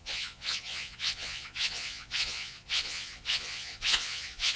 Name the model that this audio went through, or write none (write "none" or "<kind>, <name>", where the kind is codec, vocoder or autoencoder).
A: vocoder, Vocos